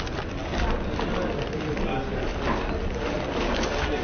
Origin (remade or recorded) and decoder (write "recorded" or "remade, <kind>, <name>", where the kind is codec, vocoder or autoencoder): recorded